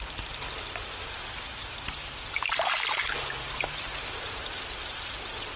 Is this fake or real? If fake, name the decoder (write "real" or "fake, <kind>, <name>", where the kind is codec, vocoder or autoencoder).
fake, vocoder, BigVGAN v2